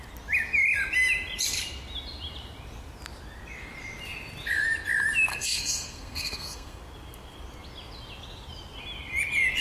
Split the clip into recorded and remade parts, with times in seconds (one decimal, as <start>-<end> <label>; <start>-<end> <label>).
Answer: 0.0-5.3 recorded; 5.3-6.8 remade; 6.8-9.6 recorded